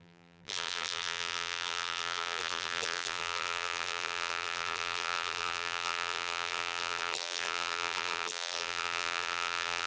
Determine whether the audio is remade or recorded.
remade